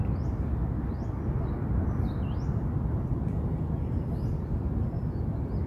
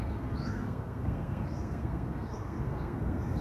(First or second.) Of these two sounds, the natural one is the first